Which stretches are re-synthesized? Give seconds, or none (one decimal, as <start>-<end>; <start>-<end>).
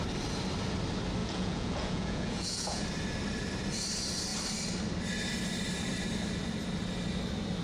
1.2-2.8